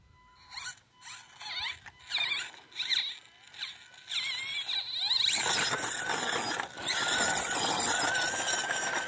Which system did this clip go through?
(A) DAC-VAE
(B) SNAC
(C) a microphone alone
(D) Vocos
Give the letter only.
C